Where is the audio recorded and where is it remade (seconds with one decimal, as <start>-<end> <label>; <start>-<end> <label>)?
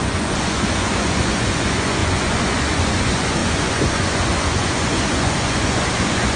0.0-6.4 remade